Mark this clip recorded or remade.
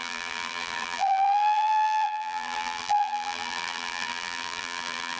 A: remade